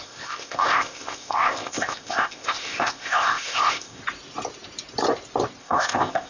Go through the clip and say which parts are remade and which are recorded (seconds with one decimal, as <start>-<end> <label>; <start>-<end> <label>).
0.0-4.0 remade; 4.0-5.6 recorded; 5.6-6.3 remade